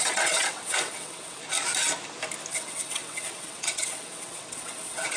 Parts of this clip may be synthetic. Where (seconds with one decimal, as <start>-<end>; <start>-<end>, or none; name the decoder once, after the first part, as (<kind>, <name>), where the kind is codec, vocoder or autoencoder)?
0.0-1.4 (vocoder, WaveNeXt); 2.5-5.2